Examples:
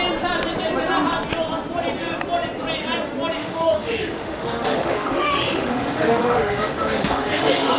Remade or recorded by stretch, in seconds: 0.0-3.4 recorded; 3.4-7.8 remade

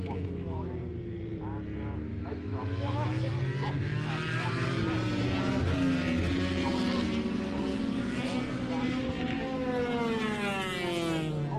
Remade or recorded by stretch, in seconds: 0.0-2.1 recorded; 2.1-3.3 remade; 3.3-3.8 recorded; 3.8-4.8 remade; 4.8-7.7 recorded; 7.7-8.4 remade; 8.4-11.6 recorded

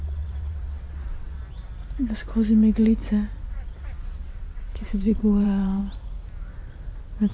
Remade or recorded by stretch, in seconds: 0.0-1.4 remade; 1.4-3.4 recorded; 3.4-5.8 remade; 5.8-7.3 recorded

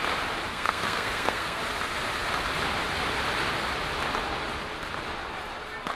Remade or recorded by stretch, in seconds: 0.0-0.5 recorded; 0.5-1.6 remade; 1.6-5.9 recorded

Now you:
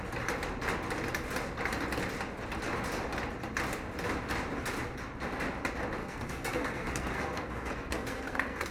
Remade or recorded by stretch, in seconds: 0.0-6.0 recorded; 6.0-8.7 remade